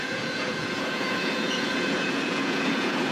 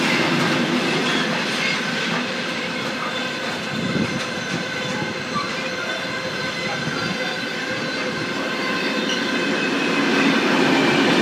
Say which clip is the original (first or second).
second